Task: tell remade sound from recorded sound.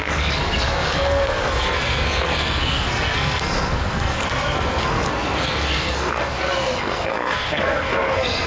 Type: remade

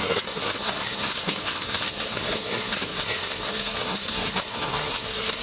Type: remade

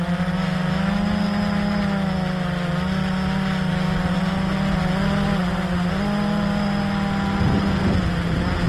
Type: recorded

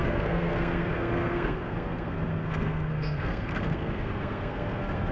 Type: remade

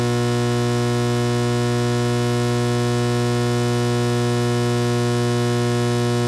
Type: recorded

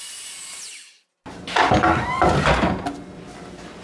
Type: recorded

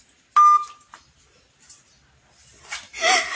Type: recorded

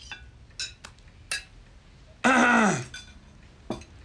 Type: recorded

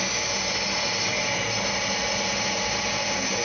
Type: recorded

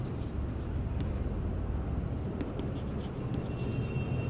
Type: recorded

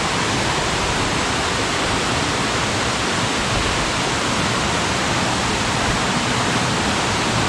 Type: recorded